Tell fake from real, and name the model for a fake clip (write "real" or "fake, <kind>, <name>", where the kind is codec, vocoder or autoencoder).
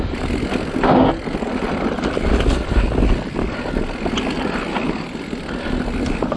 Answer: real